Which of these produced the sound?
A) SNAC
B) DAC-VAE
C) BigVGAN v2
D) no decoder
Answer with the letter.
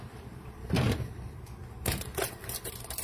C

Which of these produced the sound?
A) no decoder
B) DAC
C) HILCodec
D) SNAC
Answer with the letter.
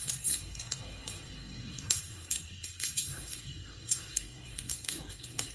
D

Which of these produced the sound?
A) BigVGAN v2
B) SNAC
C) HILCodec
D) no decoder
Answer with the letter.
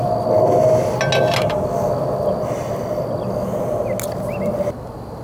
D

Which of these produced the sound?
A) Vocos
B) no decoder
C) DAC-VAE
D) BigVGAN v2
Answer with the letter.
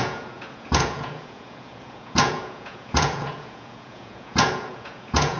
A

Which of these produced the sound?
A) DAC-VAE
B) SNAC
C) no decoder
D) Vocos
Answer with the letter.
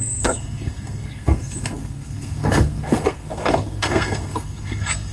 B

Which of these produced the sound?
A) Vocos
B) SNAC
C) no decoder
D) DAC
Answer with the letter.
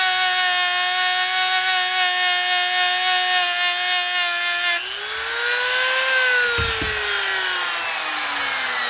C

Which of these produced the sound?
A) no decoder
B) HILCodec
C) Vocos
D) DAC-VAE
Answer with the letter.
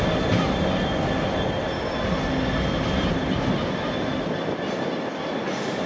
A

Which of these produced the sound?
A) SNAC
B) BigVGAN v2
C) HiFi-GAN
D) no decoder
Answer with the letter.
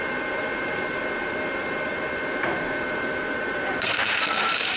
B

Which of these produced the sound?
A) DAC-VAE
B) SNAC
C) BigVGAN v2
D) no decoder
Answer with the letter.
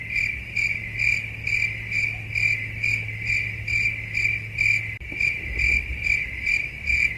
D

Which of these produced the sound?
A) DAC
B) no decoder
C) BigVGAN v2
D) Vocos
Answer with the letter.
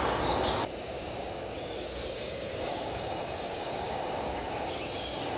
A